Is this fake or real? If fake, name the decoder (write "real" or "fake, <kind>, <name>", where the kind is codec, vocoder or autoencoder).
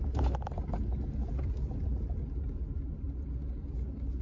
real